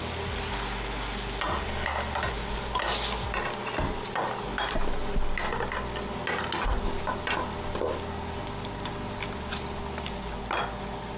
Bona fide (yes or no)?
yes